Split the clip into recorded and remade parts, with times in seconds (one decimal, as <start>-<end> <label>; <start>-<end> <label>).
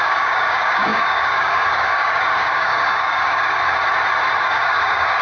0.0-3.6 remade; 3.6-4.4 recorded; 4.4-5.2 remade